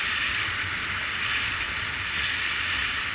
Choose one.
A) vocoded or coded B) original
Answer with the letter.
A